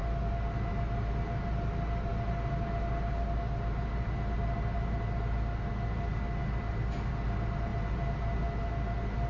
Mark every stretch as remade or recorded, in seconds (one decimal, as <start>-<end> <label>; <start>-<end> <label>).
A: 0.0-9.3 recorded